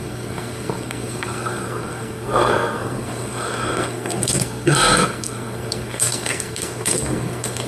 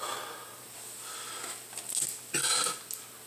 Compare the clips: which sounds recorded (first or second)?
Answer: second